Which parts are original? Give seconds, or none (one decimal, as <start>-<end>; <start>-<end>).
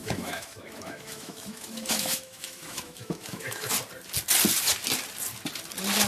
3.7-6.1